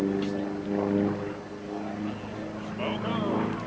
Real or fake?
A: real